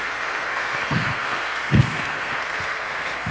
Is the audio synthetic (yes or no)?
yes